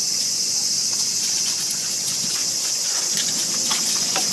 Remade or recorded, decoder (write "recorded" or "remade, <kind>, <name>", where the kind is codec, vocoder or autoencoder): remade, vocoder, Vocos